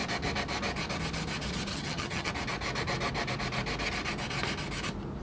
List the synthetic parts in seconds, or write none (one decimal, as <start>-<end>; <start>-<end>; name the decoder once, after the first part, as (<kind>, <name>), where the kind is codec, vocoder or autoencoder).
1.7-2.3 (vocoder, HiFi-GAN)